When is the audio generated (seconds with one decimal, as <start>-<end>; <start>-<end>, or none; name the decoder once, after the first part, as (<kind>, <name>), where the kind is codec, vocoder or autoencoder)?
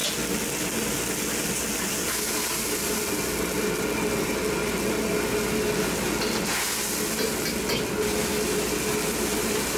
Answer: none